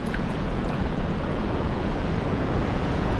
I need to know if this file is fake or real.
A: fake